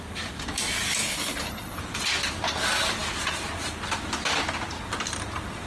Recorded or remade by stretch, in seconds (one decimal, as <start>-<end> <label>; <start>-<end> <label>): 0.0-1.0 recorded; 1.0-1.8 remade; 1.8-5.7 recorded